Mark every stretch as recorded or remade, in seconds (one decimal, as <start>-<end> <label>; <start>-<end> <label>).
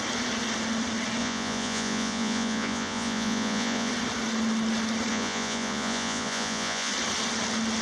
0.0-1.2 recorded; 1.2-3.9 remade; 3.9-5.1 recorded; 5.1-6.9 remade; 6.9-7.8 recorded